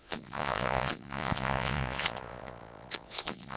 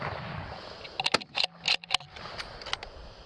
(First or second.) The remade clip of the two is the first